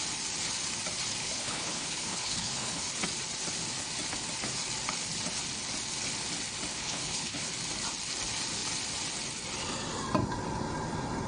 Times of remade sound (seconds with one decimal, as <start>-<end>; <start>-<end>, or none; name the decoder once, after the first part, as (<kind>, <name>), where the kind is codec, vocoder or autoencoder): 1.2-2.9 (codec, HILCodec); 6.7-7.5